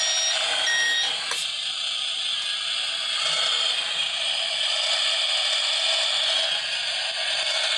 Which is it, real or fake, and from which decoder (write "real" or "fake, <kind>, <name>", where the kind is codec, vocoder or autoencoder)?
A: real